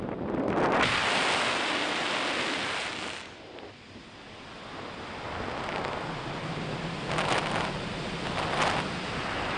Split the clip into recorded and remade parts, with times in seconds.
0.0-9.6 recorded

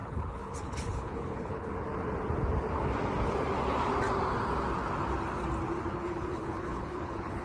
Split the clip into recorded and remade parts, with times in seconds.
0.0-1.7 remade; 1.7-5.9 recorded; 5.9-7.4 remade

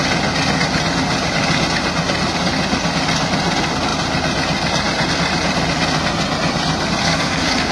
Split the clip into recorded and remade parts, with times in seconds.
0.0-7.0 recorded; 7.0-7.7 remade